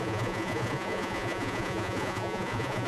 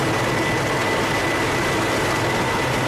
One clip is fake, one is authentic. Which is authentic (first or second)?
second